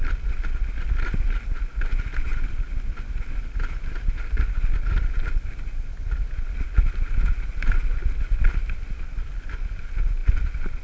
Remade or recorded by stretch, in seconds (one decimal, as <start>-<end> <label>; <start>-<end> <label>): 0.0-10.8 recorded